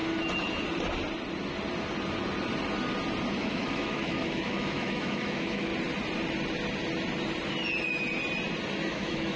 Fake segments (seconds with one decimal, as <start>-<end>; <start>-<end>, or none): 3.4-5.7; 8.9-9.4